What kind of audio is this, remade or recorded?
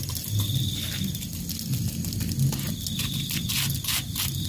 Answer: recorded